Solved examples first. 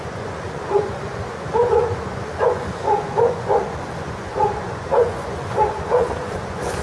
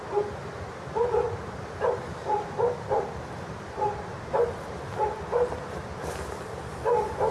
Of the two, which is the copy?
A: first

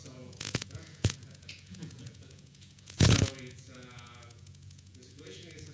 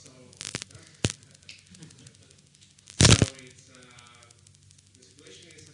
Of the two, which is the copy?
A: first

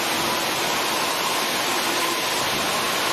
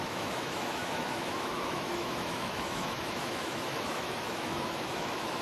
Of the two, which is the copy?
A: second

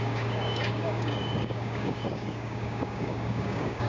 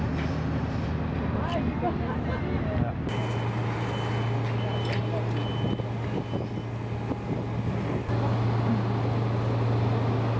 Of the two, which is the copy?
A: first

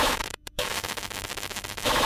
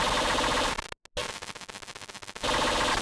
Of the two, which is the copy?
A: first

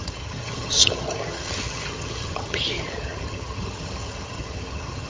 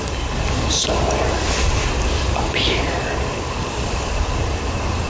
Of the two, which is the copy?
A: first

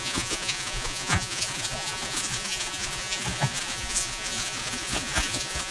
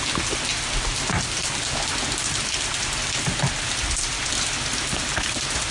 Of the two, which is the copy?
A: first